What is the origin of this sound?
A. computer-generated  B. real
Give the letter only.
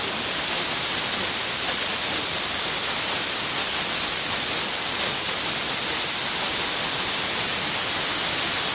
B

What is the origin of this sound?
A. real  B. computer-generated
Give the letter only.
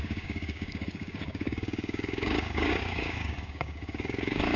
B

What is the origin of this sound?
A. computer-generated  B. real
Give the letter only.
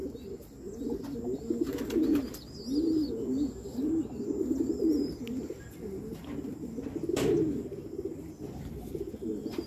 B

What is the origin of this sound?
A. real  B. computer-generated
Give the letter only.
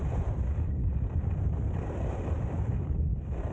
A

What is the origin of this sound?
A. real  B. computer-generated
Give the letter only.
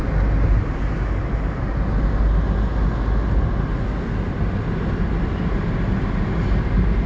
A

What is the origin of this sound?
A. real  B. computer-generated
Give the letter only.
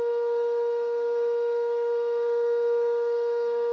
B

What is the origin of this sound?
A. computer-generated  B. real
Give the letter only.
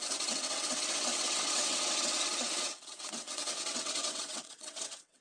A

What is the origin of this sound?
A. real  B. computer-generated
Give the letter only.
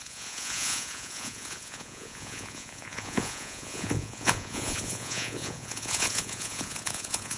B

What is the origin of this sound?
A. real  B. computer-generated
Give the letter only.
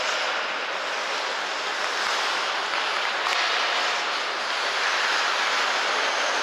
A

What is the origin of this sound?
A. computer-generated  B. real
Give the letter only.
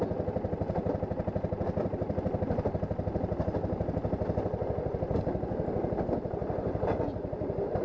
B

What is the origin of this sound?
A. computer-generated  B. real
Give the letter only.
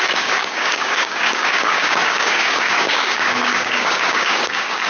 A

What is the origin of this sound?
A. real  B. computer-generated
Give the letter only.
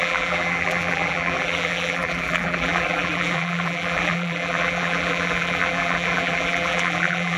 B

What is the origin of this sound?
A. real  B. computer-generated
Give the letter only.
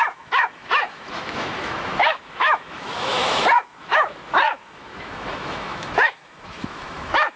B